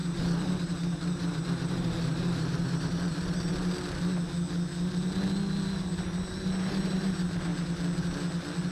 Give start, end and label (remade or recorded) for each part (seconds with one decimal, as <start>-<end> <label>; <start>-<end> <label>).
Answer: 0.0-3.1 remade; 3.1-8.7 recorded